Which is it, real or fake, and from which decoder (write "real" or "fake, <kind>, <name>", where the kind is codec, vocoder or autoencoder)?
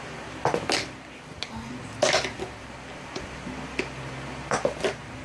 real